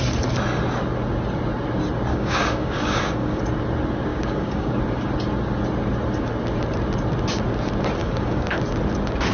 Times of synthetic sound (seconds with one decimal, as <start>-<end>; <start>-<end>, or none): 2.1-3.4; 4.1-4.8; 8.0-8.6